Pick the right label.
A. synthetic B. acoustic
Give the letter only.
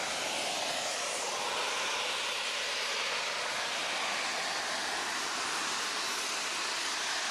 B